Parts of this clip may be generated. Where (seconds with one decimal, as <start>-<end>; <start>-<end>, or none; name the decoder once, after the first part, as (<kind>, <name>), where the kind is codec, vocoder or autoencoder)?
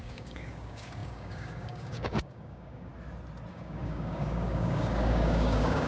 0.0-2.9 (codec, DAC); 3.5-5.9